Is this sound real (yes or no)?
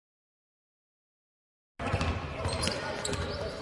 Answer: yes